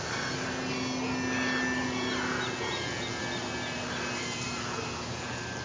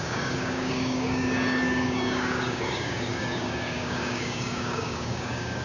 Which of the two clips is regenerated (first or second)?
second